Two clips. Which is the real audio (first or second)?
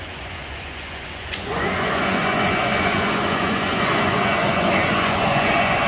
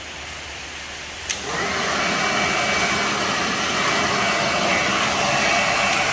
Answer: second